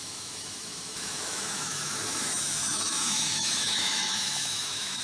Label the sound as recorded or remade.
remade